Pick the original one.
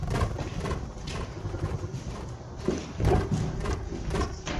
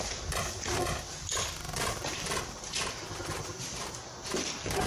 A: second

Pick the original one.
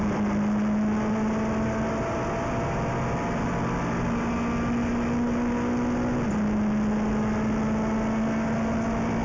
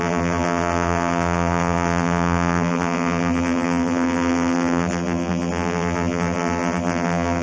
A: first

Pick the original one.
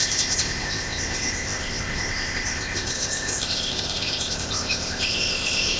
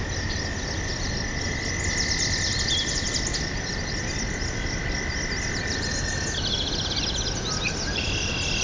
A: second